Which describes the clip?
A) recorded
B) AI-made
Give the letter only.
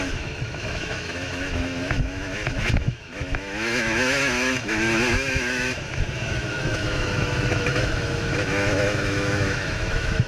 B